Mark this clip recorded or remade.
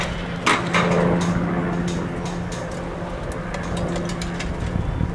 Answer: recorded